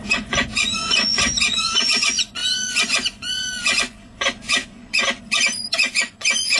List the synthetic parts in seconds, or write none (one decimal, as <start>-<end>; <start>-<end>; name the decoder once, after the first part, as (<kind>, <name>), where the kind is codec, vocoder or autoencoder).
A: 0.0-6.6 (vocoder, Vocos)